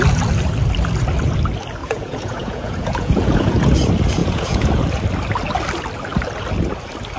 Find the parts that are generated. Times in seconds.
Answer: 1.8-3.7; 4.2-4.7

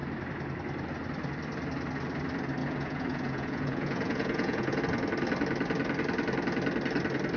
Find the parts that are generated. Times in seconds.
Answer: 2.6-4.8

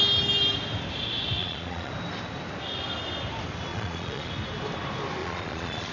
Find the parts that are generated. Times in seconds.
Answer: 1.4-1.9; 3.7-4.3; 5.2-5.9

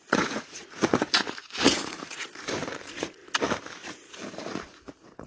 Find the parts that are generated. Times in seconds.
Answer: 0.0-3.2; 4.3-5.3

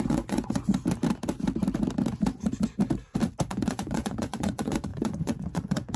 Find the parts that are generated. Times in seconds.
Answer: 0.0-0.7; 3.5-6.0